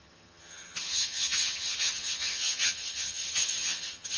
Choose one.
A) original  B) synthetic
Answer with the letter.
B